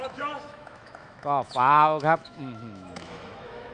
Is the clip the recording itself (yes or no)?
no